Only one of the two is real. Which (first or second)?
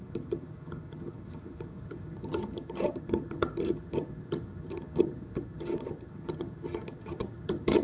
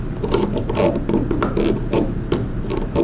second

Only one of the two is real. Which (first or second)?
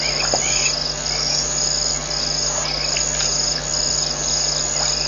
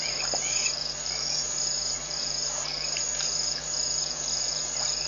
first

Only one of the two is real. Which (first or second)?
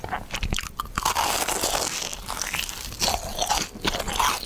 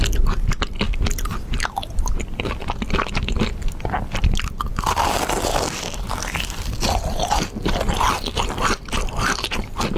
first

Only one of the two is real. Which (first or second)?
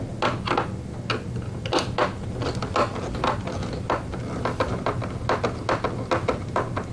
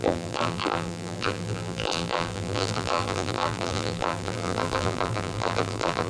first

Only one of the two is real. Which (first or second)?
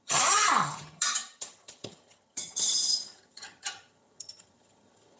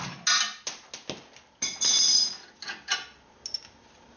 second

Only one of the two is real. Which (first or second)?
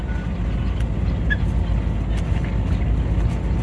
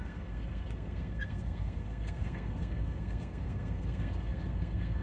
first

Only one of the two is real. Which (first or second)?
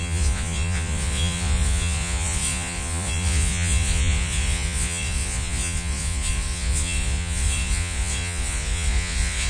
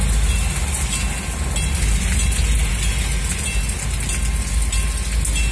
second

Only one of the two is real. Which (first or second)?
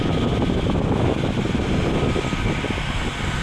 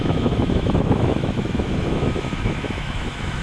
first